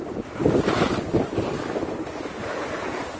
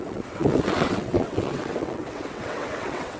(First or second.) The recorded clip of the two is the first